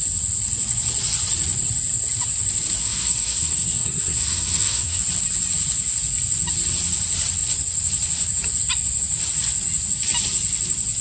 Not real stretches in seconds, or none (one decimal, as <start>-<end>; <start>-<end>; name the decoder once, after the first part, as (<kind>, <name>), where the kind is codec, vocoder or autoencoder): 2.8-5.0 (codec, SNAC)